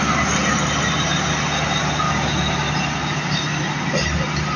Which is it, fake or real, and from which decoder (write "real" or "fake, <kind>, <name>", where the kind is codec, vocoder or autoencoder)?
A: real